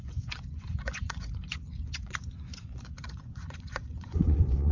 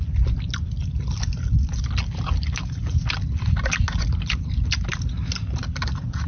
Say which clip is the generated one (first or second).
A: first